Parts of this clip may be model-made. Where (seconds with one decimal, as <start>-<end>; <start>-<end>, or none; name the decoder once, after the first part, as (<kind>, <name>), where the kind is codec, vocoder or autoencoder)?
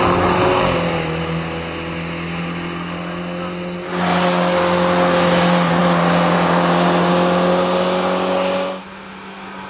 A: none